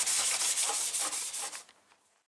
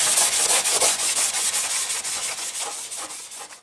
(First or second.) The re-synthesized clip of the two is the second